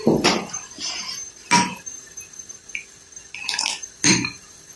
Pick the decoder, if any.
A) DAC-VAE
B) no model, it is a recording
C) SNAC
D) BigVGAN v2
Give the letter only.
B